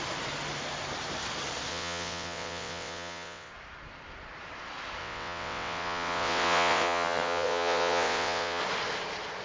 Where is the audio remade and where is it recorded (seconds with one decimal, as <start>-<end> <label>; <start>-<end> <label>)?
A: 0.0-1.7 recorded; 1.7-3.5 remade; 3.5-5.0 recorded; 5.0-8.6 remade; 8.6-9.4 recorded